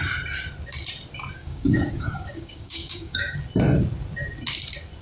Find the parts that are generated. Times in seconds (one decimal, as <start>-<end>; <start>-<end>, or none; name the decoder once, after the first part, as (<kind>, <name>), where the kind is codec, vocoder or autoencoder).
1.4-3.4 (codec, DAC)